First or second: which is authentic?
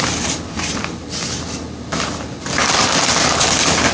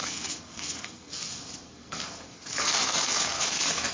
first